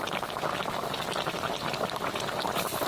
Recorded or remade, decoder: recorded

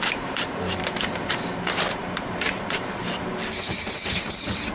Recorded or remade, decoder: remade, vocoder, BigVGAN v2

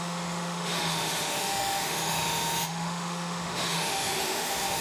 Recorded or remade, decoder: remade, autoencoder, DAC-VAE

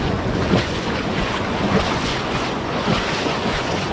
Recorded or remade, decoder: remade, vocoder, Vocos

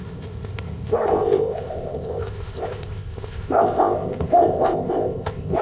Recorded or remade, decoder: remade, codec, ZipCodec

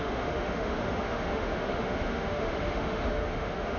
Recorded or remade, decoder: remade, autoencoder, DAC-VAE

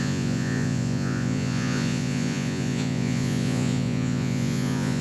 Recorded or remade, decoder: remade, vocoder, Vocos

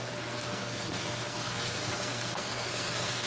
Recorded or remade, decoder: remade, codec, SNAC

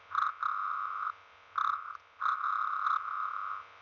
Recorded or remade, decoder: recorded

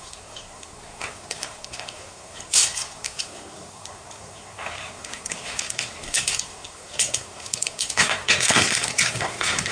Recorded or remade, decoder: remade, codec, SNAC